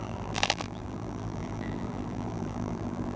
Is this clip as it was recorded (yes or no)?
no